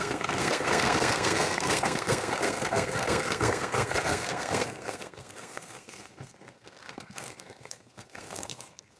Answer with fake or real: fake